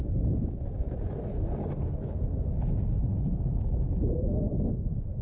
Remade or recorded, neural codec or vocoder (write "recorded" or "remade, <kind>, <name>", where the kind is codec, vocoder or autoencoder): recorded